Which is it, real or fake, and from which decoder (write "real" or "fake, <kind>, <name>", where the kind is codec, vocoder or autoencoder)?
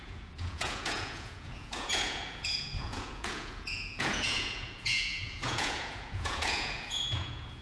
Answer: fake, vocoder, Vocos